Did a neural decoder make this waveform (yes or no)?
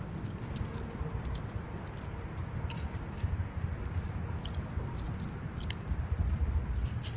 no